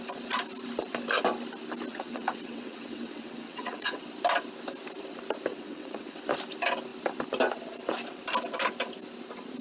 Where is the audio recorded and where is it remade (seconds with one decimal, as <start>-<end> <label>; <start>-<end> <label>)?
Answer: 0.0-1.9 recorded; 1.9-4.0 remade; 4.0-5.5 recorded; 5.5-6.2 remade; 6.2-9.6 recorded